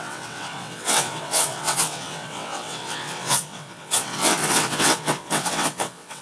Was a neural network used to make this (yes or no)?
yes